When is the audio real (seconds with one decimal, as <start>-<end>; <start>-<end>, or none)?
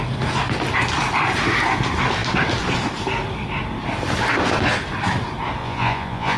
0.0-5.6